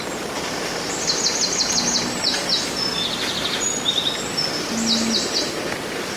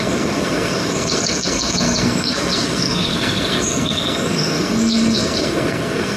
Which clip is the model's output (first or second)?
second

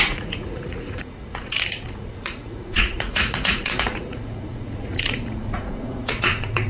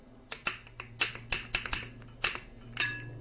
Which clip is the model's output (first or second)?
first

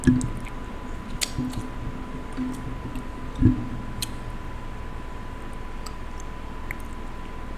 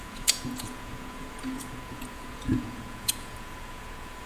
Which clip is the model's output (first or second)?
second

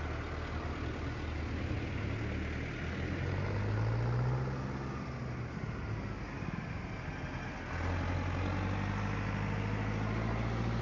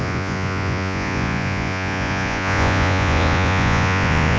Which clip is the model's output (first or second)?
second